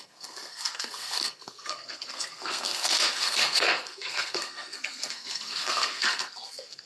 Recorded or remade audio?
remade